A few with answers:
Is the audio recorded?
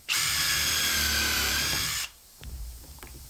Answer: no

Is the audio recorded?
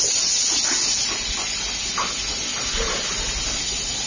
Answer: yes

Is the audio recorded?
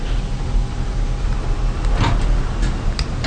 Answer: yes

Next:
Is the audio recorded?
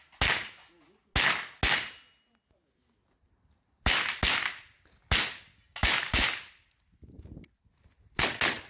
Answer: yes